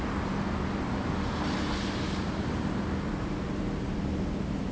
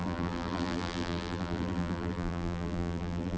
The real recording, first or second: first